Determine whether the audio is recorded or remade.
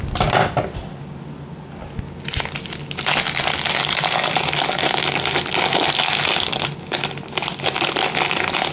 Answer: recorded